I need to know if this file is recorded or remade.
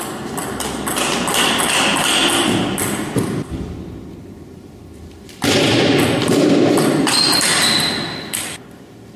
recorded